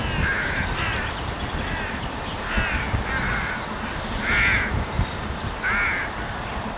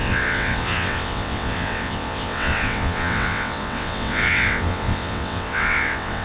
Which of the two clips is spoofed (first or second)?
second